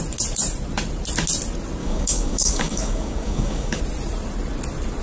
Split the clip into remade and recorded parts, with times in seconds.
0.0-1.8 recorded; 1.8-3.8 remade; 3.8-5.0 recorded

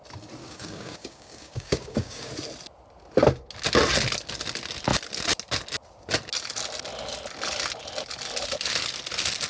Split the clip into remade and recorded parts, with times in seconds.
0.0-0.4 recorded; 0.4-2.3 remade; 2.3-9.5 recorded

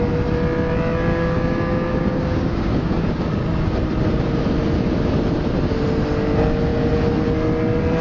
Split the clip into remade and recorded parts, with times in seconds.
0.0-1.1 recorded; 1.1-3.2 remade; 3.2-8.0 recorded

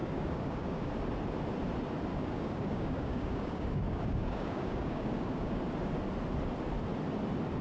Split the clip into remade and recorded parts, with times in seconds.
0.0-0.9 remade; 0.9-2.1 recorded; 2.1-5.6 remade; 5.6-7.6 recorded

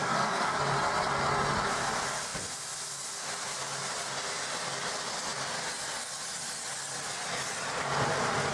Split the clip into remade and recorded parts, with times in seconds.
0.0-0.6 remade; 0.6-8.5 recorded